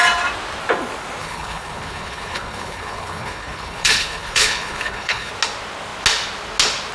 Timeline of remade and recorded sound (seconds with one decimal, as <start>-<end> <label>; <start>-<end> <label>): 0.0-1.2 recorded; 1.2-5.3 remade; 5.3-6.9 recorded